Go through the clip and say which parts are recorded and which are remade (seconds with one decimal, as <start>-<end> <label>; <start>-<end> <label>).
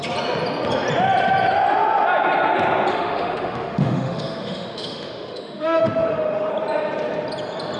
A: 0.0-2.9 recorded; 2.9-6.5 remade; 6.5-7.8 recorded